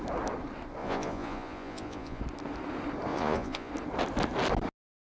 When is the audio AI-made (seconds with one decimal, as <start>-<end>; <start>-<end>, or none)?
0.8-2.2; 3.1-3.7